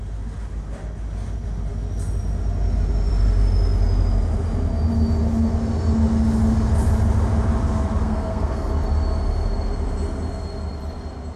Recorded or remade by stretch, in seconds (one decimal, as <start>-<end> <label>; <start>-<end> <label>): 0.0-8.0 recorded; 8.0-8.7 remade; 8.7-11.4 recorded